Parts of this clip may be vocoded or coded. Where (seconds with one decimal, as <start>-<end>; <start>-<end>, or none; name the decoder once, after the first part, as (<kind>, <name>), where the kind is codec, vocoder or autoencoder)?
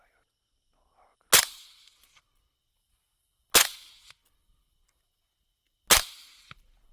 none